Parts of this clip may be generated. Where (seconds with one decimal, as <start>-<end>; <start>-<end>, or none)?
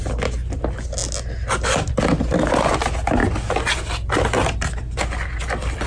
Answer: none